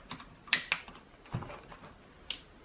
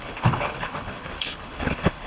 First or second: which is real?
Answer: first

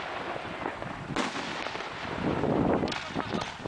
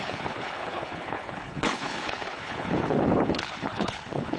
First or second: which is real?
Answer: first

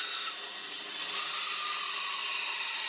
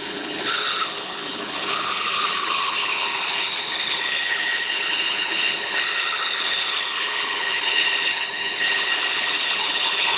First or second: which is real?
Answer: first